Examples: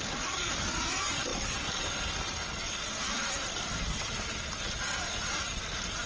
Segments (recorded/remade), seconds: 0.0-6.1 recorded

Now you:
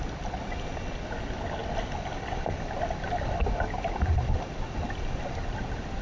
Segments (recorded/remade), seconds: 0.0-6.0 recorded

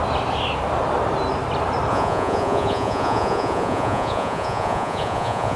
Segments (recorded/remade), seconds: 0.0-1.9 recorded; 1.9-5.6 remade

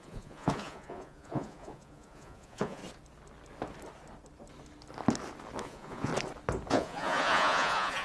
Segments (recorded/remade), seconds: 0.0-2.8 remade; 2.8-5.6 recorded; 5.6-6.1 remade; 6.1-6.7 recorded; 6.7-8.0 remade

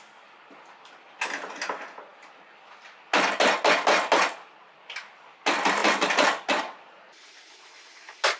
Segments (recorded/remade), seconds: 0.0-8.4 recorded

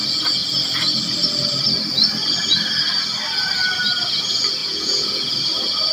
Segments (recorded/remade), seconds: 0.0-4.6 recorded; 4.6-5.2 remade; 5.2-5.9 recorded

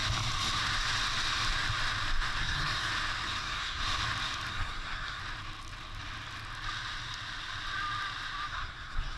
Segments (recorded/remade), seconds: 0.0-2.4 recorded; 2.4-2.9 remade; 2.9-3.4 recorded; 3.4-3.8 remade; 3.8-4.5 recorded; 4.5-5.2 remade; 5.2-8.5 recorded; 8.5-9.2 remade

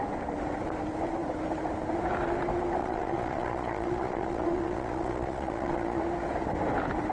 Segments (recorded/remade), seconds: 0.0-2.8 recorded; 2.8-6.0 remade; 6.0-7.1 recorded